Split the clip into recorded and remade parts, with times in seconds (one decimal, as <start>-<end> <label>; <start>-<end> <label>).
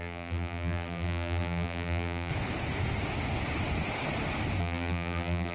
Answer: 0.0-2.3 remade; 2.3-4.6 recorded; 4.6-5.5 remade